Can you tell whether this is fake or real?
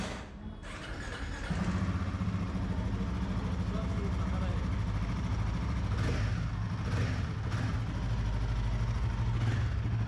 real